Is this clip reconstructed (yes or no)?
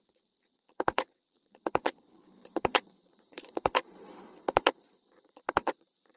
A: yes